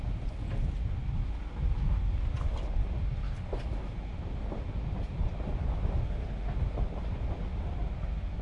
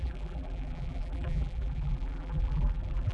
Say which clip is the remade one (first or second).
second